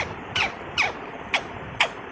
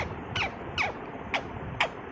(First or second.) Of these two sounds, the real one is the second